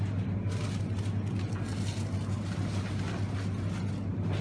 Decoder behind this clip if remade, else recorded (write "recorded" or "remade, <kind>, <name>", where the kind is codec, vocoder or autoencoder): recorded